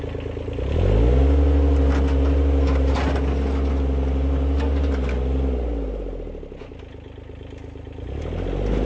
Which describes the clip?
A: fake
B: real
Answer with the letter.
B